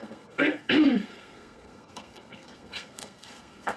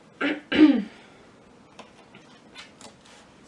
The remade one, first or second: first